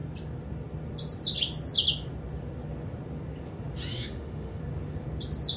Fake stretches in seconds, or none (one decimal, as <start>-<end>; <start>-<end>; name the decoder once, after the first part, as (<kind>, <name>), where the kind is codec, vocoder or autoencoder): 3.9-4.6 (autoencoder, DAC-VAE)

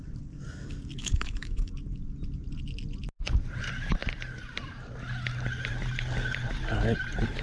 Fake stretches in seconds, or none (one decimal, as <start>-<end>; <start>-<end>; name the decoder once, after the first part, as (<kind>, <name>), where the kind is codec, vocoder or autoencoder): 1.0-1.7 (autoencoder, DAC-VAE)

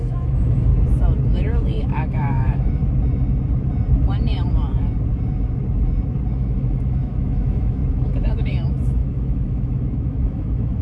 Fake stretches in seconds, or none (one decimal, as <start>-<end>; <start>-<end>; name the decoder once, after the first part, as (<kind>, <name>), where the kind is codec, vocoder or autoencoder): 0.0-0.7 (autoencoder, DAC-VAE); 1.8-2.8; 6.3-7.8; 8.3-10.8

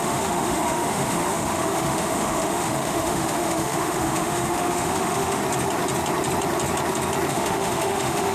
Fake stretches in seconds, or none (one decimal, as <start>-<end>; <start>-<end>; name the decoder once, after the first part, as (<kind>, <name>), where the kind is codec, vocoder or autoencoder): 0.0-5.4 (autoencoder, DAC-VAE); 7.3-8.3

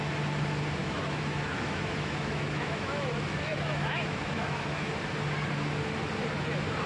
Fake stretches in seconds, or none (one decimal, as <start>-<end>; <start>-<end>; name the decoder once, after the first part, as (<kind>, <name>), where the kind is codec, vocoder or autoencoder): 0.8-4.9 (autoencoder, DAC-VAE)

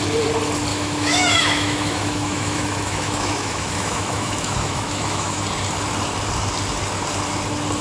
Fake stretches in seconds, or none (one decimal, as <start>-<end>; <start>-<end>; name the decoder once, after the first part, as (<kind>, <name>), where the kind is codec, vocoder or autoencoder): 0.7-5.4 (autoencoder, DAC-VAE)